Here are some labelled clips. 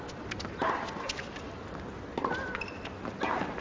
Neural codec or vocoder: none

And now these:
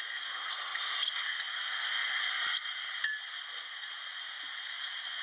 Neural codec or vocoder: none